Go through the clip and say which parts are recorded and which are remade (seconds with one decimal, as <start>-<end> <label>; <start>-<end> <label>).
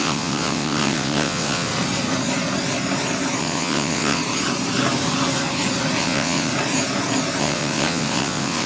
0.0-1.7 remade; 1.7-3.4 recorded; 3.4-4.2 remade; 4.2-6.0 recorded; 6.0-6.5 remade; 6.5-7.4 recorded; 7.4-8.7 remade